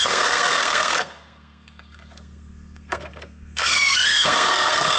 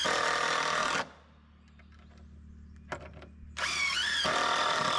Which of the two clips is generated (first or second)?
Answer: first